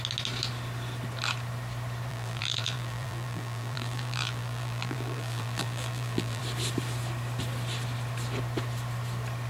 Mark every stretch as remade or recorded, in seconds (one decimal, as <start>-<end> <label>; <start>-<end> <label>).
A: 0.0-2.1 recorded; 2.1-6.4 remade; 6.4-9.5 recorded